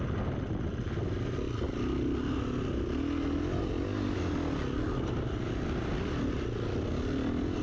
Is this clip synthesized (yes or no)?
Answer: no